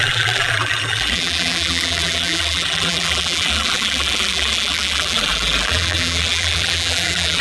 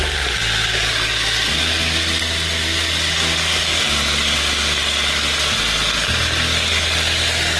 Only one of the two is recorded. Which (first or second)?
second